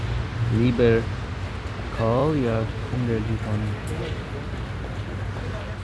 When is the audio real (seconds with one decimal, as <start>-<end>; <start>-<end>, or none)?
0.0-5.8